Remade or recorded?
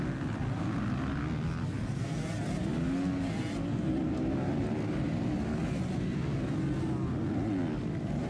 recorded